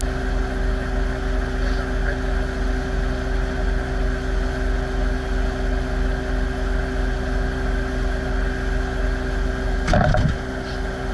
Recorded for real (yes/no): yes